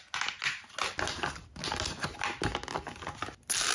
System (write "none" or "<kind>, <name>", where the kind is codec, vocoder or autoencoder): none